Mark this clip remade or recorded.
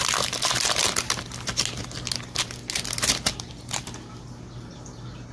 recorded